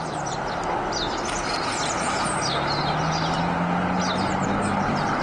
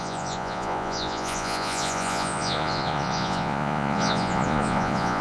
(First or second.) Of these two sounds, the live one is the first